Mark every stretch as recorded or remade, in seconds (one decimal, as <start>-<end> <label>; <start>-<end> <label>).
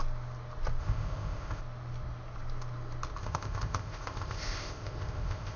0.0-0.8 recorded; 0.8-1.6 remade; 1.6-3.2 recorded; 3.2-5.6 remade